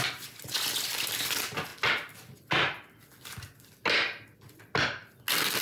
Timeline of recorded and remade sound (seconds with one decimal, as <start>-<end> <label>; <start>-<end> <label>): 0.0-5.6 recorded